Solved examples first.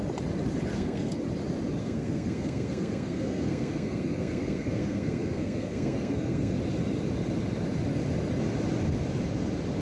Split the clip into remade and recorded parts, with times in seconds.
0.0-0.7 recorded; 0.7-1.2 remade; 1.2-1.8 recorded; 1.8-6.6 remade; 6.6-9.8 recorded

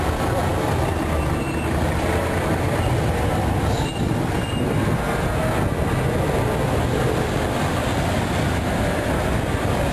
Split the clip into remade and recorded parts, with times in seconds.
0.0-9.9 recorded

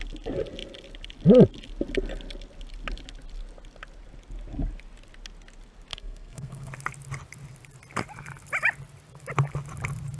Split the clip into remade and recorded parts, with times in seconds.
0.0-5.9 recorded; 5.9-6.7 remade; 6.7-10.2 recorded